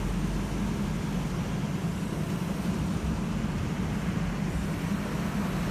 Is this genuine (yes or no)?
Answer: yes